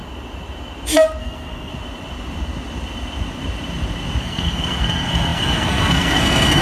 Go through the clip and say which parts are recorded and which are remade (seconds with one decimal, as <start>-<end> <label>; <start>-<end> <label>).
0.0-1.2 recorded; 1.2-1.7 remade; 1.7-4.2 recorded; 4.2-6.6 remade